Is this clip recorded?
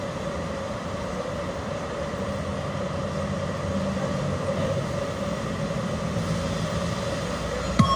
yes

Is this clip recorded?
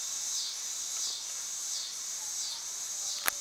no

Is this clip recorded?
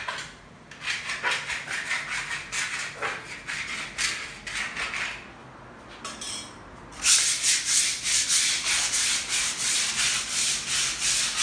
yes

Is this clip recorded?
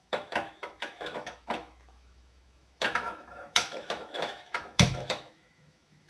no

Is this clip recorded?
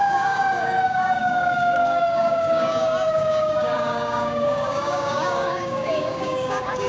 no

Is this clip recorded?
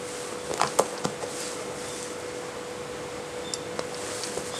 yes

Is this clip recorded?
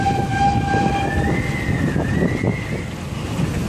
yes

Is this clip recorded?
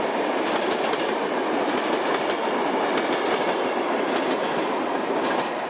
yes